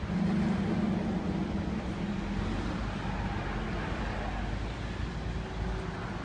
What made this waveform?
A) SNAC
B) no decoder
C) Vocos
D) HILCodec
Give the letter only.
B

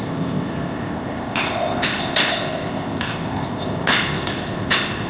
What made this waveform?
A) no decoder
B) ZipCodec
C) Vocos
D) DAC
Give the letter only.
B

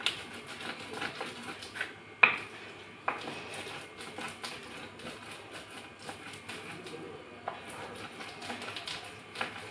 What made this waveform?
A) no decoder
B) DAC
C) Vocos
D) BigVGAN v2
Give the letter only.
A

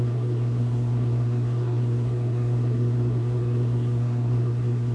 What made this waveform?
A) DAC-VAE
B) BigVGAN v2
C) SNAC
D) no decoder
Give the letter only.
C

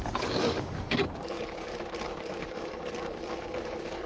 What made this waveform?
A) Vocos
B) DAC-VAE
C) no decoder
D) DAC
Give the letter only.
D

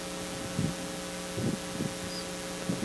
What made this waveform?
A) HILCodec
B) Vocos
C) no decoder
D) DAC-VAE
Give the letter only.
C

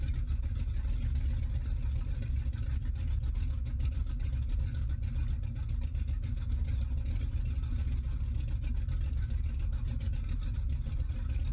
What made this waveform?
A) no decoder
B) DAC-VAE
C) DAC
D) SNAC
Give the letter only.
A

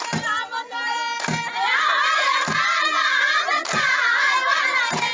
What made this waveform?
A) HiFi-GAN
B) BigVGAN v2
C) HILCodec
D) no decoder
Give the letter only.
D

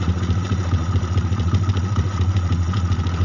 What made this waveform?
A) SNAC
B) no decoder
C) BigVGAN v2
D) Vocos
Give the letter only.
D